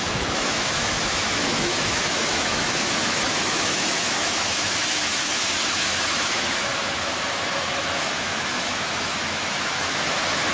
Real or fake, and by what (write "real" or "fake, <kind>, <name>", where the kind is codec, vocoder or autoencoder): fake, autoencoder, DAC-VAE